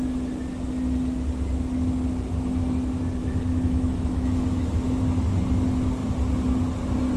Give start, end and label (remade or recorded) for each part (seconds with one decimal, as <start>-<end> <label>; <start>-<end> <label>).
0.0-3.2 recorded; 3.2-5.0 remade; 5.0-7.2 recorded